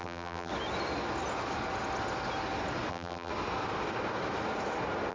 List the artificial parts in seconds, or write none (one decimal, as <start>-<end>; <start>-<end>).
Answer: 0.0-0.5; 2.9-3.3

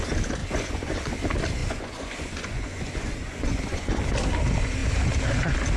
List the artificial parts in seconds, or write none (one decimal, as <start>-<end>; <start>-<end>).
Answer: 0.4-1.1; 1.6-4.0

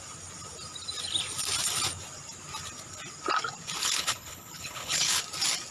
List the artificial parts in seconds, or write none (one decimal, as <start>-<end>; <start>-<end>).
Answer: 3.8-5.2

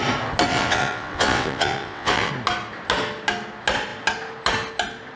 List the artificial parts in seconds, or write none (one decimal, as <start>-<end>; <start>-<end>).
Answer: 0.5-2.3

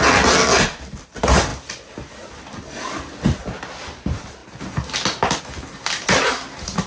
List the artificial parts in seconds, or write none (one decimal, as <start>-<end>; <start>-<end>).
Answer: none

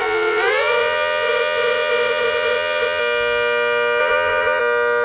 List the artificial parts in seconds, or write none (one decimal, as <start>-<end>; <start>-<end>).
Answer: 0.0-3.0; 4.0-4.6

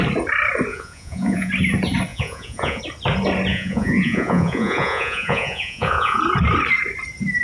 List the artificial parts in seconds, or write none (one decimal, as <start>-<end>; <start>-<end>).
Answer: 0.7-1.5; 2.1-2.8; 3.5-6.2

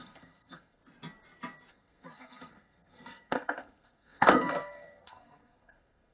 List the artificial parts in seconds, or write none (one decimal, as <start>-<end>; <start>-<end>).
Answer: 0.0-0.8; 1.7-6.1